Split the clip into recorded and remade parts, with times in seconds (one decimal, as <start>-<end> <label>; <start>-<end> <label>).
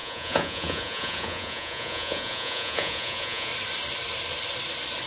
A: 0.0-3.5 remade; 3.5-5.1 recorded